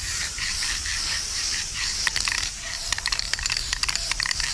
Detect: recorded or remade remade